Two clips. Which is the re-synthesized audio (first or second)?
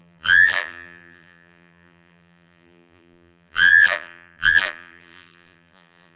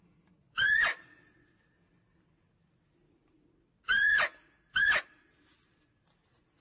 first